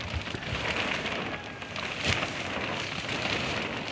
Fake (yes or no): no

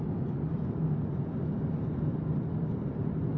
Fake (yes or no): no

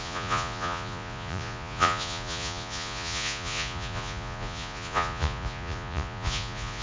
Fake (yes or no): yes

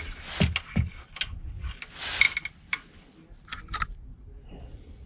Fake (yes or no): no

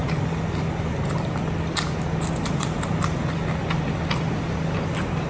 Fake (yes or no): no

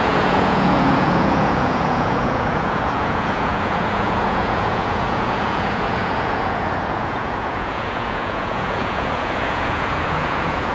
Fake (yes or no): yes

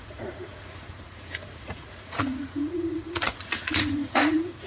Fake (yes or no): yes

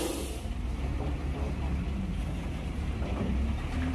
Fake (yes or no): no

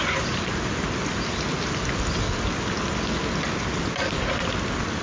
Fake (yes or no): no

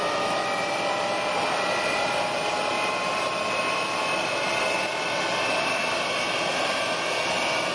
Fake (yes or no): no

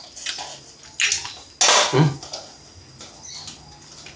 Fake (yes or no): no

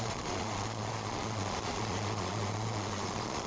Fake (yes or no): yes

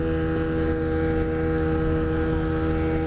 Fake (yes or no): no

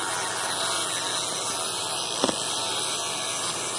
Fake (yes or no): no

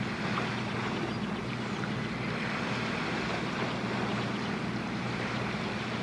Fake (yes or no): no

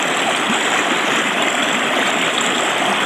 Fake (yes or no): no